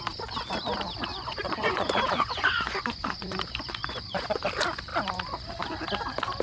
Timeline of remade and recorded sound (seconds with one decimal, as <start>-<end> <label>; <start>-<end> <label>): 0.0-1.1 recorded; 1.1-4.4 remade; 4.4-6.4 recorded